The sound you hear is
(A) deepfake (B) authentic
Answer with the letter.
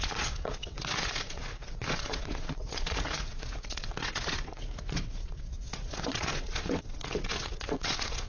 A